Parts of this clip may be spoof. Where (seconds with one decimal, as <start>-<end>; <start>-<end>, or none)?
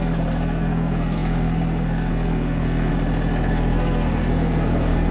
0.0-2.9; 3.5-5.1